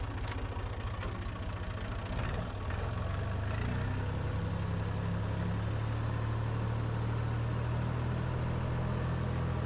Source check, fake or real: real